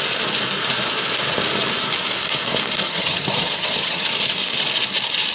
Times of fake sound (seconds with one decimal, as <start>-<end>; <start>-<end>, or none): 2.8-4.1